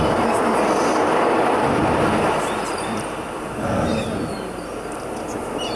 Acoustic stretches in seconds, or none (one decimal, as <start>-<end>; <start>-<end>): 0.0-1.0; 4.5-5.8